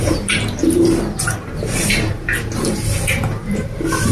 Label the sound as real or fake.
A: fake